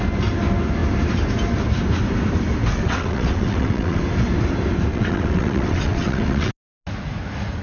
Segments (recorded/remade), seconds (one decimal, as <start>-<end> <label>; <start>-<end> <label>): 0.0-2.7 recorded; 2.7-4.0 remade; 4.0-4.9 recorded; 4.9-6.5 remade; 6.5-7.6 recorded